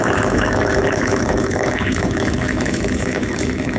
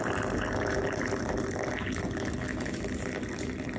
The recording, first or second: second